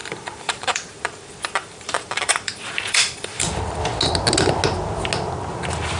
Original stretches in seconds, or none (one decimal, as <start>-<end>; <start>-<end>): 3.6-6.0